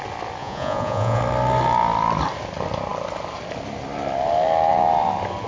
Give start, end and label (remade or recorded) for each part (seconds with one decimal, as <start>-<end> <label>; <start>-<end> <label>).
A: 0.0-0.4 recorded; 0.4-1.2 remade; 1.2-5.5 recorded